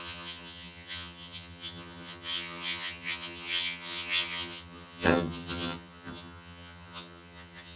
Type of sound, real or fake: fake